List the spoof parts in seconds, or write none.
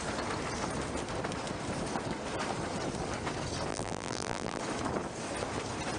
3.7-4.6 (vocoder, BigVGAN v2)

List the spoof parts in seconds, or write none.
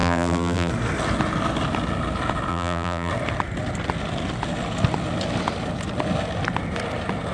0.0-0.7 (vocoder, BigVGAN v2); 2.5-3.1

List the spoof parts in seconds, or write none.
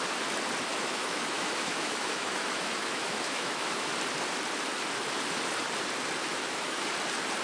0.7-3.9 (autoencoder, DAC-VAE); 6.3-6.8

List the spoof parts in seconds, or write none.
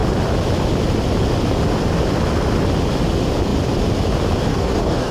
4.5-5.1 (codec, DAC)